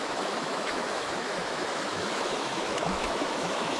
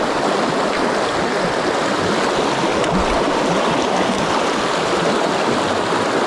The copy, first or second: first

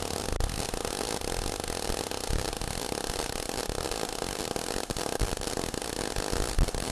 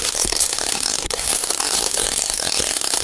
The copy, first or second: second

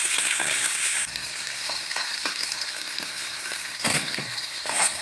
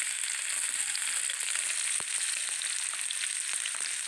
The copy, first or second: first